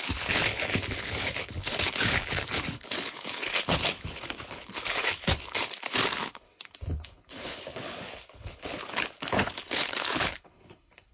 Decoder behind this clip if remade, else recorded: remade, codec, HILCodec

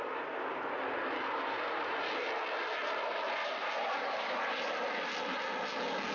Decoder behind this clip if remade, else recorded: recorded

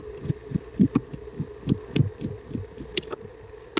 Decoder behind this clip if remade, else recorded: recorded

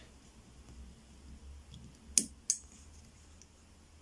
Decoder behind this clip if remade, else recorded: recorded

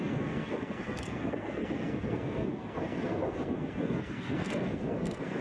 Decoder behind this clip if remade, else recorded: remade, codec, SNAC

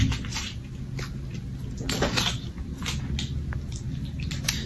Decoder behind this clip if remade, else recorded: recorded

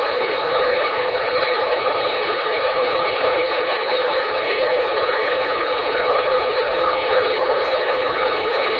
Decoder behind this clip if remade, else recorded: remade, codec, HILCodec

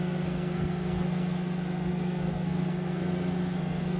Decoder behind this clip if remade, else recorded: remade, codec, SNAC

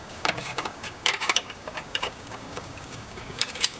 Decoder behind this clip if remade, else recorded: remade, codec, DAC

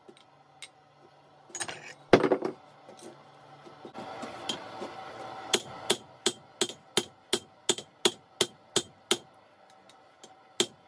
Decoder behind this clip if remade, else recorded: recorded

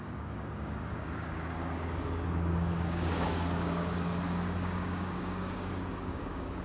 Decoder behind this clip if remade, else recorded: remade, codec, DAC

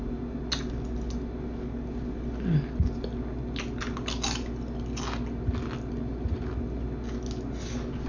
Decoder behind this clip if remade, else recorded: recorded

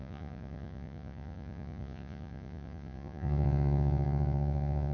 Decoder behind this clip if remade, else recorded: remade, vocoder, Vocos